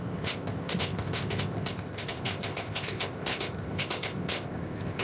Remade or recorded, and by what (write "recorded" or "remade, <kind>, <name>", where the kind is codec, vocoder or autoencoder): remade, codec, ZipCodec